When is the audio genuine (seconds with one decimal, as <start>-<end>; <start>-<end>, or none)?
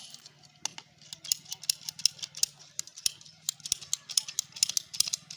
0.0-5.4